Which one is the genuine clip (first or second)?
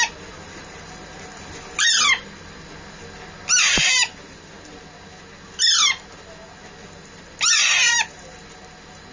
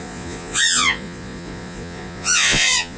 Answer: first